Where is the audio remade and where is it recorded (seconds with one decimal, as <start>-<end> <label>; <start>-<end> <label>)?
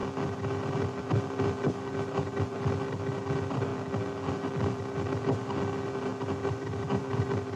0.0-7.6 recorded